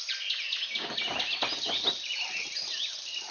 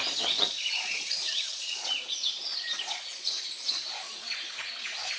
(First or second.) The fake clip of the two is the second